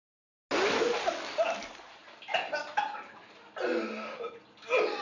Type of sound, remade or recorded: recorded